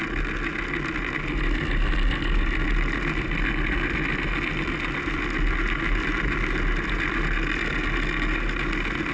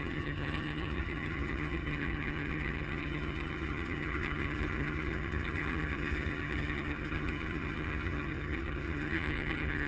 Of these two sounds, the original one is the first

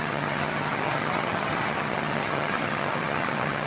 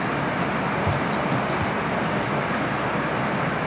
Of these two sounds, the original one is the second